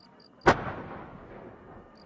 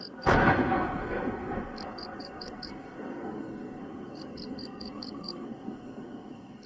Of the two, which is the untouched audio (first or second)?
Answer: first